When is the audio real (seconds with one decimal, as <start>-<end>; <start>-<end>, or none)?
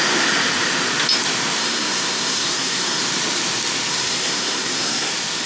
0.0-1.6; 3.0-3.9; 5.1-5.5